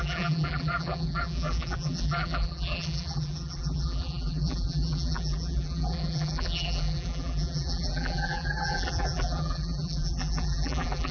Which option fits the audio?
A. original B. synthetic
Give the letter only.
B